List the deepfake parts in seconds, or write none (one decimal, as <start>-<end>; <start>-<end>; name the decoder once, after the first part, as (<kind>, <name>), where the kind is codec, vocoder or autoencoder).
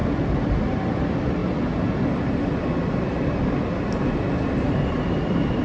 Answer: 0.8-1.4 (vocoder, BigVGAN v2); 4.8-5.6